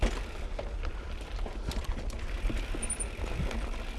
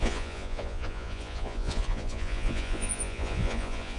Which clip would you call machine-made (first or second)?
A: second